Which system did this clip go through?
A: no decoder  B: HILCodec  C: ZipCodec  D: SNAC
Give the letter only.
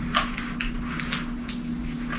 A